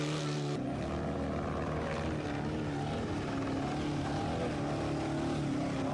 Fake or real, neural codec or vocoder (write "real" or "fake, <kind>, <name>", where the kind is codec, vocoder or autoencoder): real